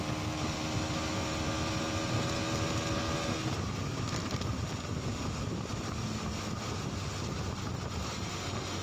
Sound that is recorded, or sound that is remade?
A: recorded